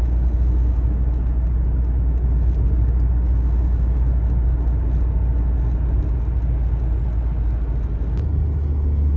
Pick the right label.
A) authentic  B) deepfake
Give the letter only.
A